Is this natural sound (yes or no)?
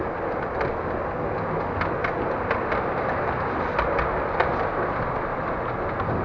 yes